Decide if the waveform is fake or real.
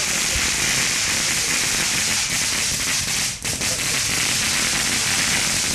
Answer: fake